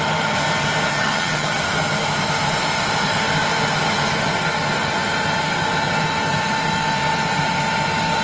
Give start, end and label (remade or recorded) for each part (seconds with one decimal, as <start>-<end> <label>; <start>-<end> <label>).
0.0-0.9 recorded; 0.9-1.6 remade; 1.6-8.2 recorded